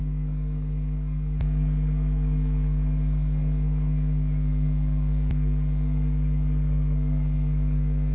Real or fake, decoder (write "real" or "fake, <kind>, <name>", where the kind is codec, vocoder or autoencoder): fake, codec, SNAC